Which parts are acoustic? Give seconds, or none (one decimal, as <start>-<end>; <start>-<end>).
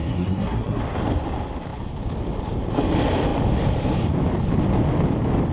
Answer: 0.8-5.5